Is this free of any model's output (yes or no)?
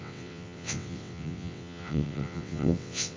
no